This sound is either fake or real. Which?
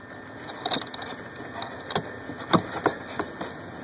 real